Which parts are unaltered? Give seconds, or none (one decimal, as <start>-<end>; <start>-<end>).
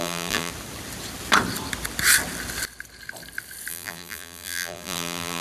0.5-3.7